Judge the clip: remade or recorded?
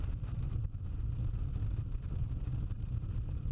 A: recorded